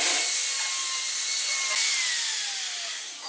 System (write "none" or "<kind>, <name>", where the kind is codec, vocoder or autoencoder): none